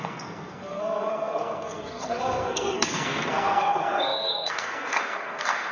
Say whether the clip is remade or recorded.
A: remade